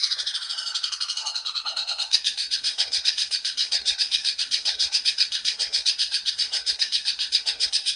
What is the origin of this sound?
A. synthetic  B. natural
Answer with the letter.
A